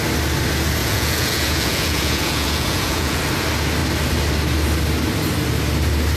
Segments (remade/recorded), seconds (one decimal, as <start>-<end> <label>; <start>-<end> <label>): 0.0-0.8 recorded; 0.8-3.2 remade; 3.2-6.2 recorded